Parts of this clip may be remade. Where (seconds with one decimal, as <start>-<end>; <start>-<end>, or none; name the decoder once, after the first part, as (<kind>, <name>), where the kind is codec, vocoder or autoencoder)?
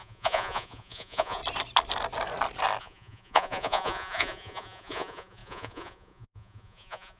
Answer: 0.0-1.4 (vocoder, Vocos); 2.8-7.2